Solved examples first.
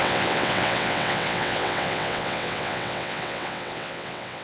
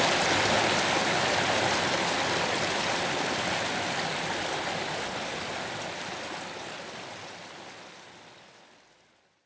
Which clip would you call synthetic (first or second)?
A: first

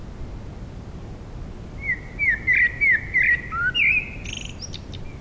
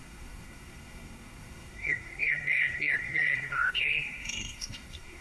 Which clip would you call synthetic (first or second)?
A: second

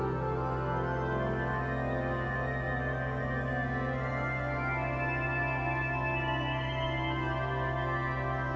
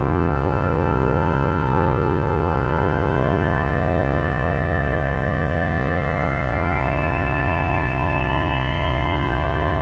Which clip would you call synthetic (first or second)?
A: second